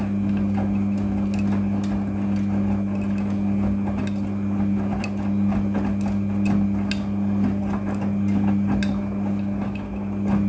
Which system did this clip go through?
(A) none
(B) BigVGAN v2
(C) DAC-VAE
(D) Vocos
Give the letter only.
A